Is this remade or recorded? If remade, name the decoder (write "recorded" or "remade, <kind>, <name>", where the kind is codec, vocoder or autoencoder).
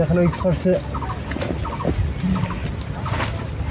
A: recorded